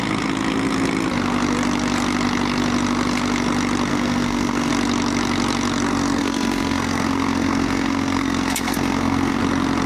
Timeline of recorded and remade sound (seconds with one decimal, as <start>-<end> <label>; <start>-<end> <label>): 0.0-3.9 recorded; 3.9-4.7 remade; 4.7-6.2 recorded; 6.2-9.4 remade; 9.4-9.9 recorded